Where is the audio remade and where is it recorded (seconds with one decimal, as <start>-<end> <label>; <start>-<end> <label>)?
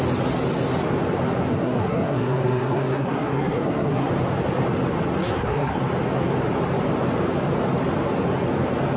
0.0-1.5 recorded; 1.5-4.1 remade; 4.1-5.2 recorded; 5.2-5.8 remade; 5.8-9.0 recorded